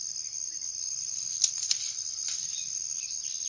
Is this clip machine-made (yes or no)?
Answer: yes